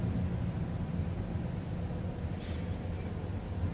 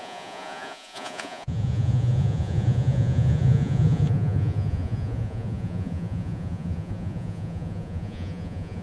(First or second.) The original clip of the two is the first